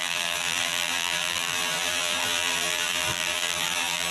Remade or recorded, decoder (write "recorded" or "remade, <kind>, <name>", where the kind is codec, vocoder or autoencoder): remade, vocoder, BigVGAN v2